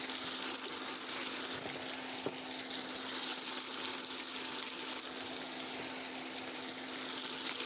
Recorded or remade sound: recorded